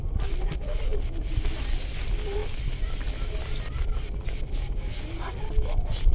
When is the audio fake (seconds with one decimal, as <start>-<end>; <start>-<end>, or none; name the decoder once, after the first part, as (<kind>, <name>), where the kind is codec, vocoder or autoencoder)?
none